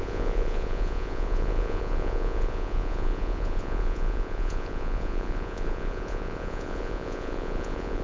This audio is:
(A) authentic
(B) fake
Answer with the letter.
B